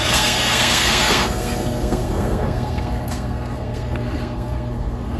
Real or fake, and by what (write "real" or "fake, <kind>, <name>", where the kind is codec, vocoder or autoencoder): fake, codec, SNAC